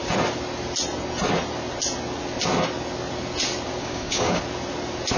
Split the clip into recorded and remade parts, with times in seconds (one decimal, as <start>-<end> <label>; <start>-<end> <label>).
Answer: 0.0-3.8 recorded; 3.8-4.4 remade; 4.4-5.2 recorded